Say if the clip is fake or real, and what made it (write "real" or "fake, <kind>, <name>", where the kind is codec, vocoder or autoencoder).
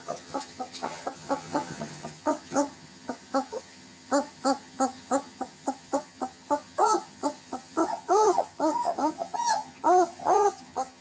fake, vocoder, HiFi-GAN